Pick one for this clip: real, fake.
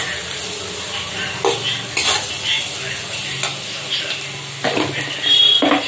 real